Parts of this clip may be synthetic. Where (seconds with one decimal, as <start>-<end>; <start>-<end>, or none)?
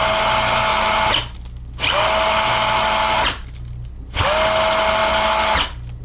none